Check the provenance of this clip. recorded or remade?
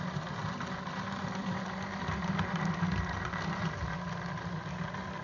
recorded